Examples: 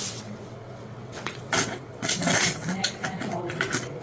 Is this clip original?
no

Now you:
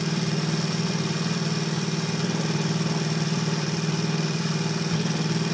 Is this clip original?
no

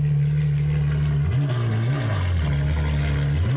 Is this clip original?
yes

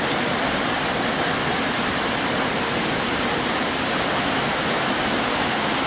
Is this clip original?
yes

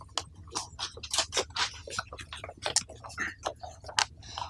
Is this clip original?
yes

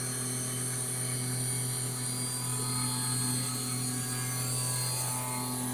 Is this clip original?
yes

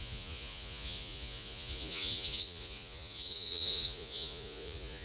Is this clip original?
no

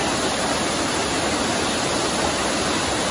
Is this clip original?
yes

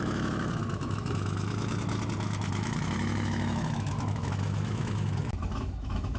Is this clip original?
no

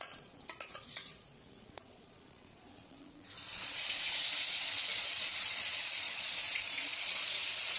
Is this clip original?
no